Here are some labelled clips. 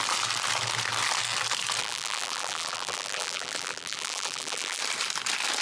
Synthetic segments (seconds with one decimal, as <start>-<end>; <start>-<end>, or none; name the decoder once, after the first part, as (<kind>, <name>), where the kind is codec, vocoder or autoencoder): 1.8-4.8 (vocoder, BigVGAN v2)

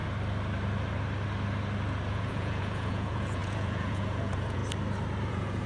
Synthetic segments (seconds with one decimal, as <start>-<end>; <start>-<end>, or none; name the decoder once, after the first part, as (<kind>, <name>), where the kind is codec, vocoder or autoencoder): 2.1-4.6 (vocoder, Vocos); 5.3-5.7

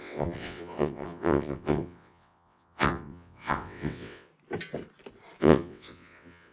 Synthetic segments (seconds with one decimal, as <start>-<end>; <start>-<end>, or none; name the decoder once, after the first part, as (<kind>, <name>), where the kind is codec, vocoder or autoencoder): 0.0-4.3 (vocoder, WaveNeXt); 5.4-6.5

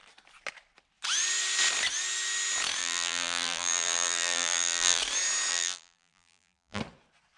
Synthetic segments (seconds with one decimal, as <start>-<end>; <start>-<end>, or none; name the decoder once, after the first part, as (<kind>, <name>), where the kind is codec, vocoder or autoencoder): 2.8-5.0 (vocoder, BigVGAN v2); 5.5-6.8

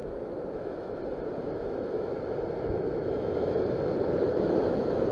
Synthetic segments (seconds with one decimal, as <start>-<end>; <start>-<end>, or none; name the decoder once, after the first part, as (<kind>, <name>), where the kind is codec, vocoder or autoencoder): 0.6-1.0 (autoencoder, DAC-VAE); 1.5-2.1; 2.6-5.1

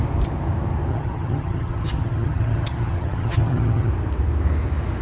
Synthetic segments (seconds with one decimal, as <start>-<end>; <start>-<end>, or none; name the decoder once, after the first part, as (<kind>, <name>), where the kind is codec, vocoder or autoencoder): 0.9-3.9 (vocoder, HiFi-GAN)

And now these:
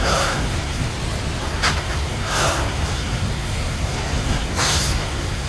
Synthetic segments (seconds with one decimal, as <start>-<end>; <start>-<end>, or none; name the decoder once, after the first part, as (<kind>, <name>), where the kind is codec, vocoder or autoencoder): 0.0-0.9 (codec, SNAC); 1.4-5.5

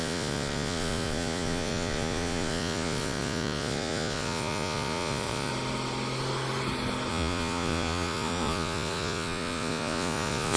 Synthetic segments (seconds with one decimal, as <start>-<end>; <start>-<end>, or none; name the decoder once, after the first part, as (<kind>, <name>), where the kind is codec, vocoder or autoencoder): 0.0-5.5 (vocoder, Vocos); 7.1-10.6